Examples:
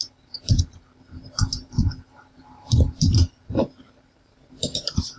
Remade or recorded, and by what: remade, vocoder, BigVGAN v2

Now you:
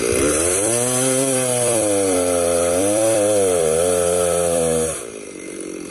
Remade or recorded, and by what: remade, vocoder, BigVGAN v2